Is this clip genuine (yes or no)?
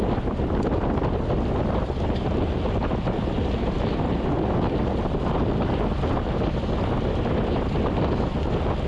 yes